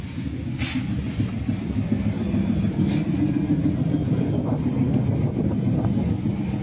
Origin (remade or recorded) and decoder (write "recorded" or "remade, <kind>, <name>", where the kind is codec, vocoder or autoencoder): recorded